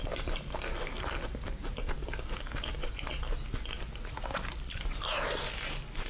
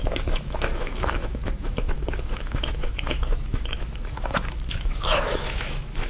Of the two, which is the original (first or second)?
first